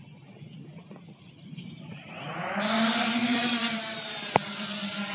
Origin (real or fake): fake